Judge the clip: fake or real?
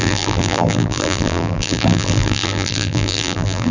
fake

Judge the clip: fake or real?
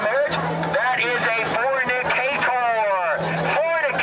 real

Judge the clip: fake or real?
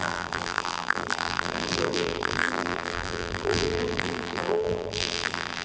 fake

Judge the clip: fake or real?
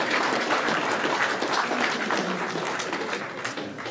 fake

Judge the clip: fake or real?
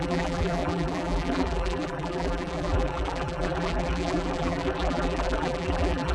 fake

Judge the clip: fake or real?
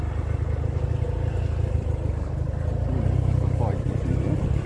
real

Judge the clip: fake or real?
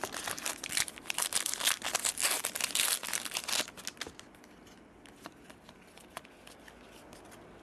real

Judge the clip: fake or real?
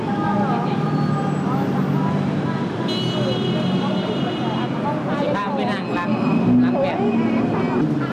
real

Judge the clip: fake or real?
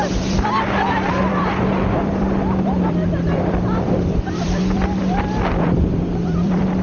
fake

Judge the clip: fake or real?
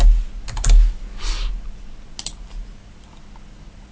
real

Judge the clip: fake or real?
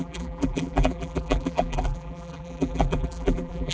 fake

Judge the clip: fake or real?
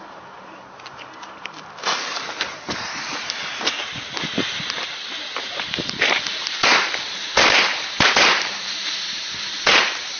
fake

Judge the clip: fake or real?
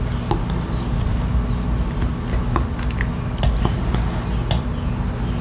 real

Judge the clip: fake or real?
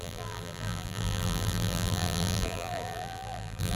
fake